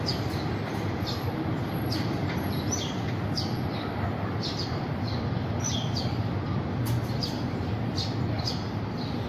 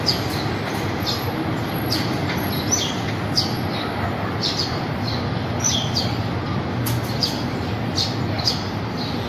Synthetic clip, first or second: first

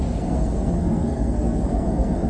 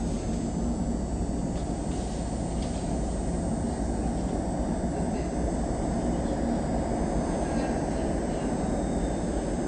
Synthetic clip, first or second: first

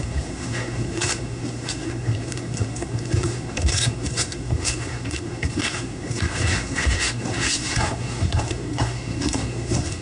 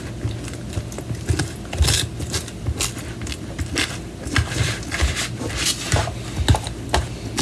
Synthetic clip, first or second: first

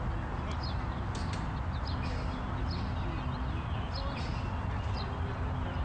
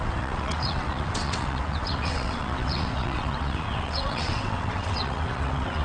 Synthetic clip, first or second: second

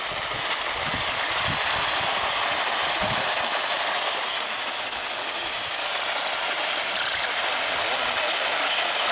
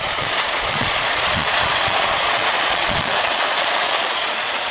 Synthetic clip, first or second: second